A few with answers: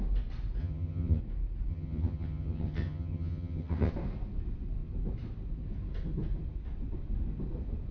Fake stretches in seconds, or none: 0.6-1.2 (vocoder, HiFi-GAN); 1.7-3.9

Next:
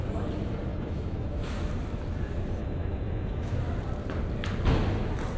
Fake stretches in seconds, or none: 0.7-1.7 (autoencoder, DAC-VAE); 2.6-3.6

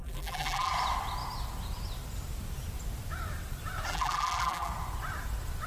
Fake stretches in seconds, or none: 0.0-0.7 (vocoder, BigVGAN v2); 3.9-4.7